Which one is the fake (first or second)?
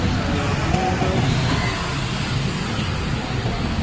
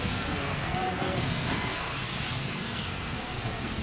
second